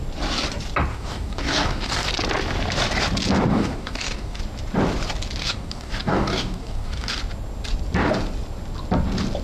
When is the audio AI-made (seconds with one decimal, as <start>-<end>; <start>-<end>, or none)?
0.9-2.1; 3.5-4.4; 5.4-7.2